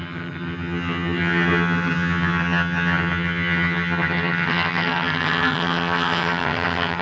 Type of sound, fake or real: fake